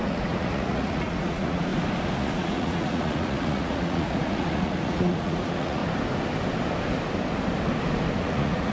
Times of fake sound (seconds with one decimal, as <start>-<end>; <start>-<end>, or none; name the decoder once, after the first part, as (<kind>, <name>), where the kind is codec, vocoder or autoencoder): 0.0-1.7 (vocoder, Vocos); 2.2-5.8; 8.2-8.7